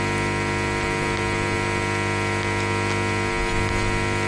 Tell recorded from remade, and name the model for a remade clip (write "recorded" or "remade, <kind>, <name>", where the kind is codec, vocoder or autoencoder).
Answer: recorded